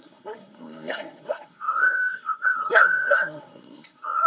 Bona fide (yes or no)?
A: no